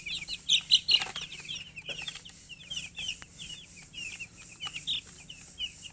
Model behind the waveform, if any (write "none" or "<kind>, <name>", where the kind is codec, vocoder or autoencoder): none